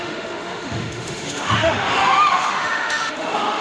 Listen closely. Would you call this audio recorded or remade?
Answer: remade